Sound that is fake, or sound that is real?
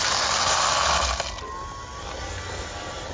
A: real